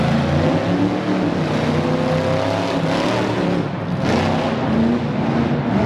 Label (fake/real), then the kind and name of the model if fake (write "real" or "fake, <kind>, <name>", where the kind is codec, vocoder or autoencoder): real